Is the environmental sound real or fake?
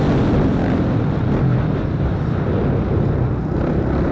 real